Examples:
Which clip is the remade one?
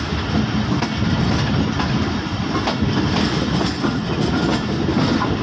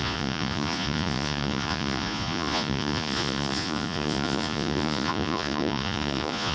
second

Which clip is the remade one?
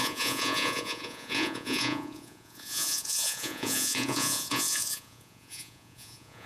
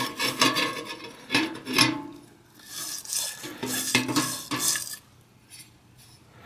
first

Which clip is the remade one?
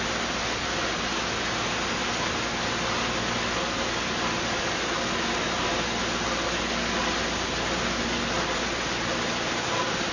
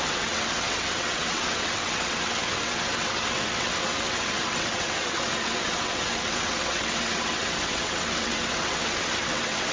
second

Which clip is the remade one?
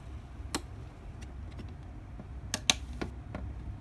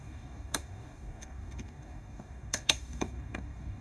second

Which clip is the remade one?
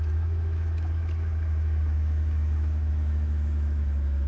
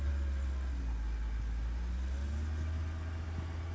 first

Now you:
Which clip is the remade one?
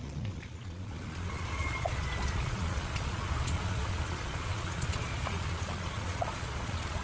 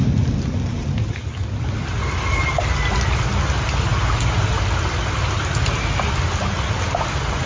first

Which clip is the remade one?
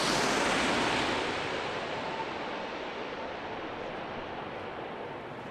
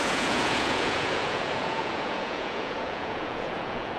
second